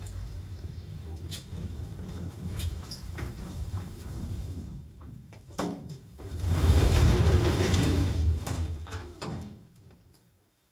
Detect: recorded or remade remade